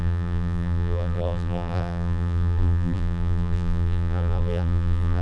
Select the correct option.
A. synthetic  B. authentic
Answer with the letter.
A